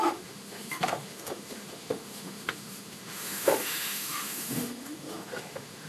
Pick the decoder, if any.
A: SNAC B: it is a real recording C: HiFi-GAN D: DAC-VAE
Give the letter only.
D